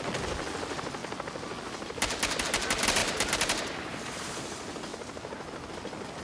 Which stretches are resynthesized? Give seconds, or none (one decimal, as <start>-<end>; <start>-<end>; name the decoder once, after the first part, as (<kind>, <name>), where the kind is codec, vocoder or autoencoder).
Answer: 3.0-4.2 (vocoder, BigVGAN v2)